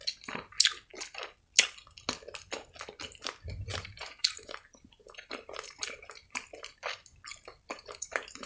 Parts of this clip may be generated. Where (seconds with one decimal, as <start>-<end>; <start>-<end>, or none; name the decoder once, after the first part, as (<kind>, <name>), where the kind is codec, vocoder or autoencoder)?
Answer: 3.7-6.8 (vocoder, BigVGAN v2); 7.3-8.5